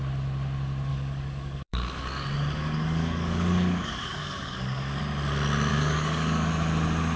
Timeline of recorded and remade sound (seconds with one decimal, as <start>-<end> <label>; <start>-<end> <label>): 0.0-0.9 recorded; 0.9-5.0 remade; 5.0-5.7 recorded; 5.7-6.5 remade; 6.5-7.2 recorded